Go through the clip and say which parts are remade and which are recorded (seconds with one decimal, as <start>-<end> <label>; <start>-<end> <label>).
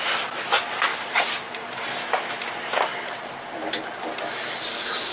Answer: 0.0-0.9 recorded; 0.9-1.8 remade; 1.8-2.9 recorded; 2.9-3.7 remade; 3.7-5.1 recorded